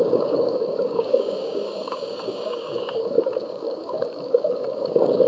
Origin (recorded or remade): remade